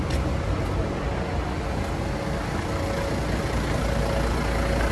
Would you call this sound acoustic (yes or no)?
yes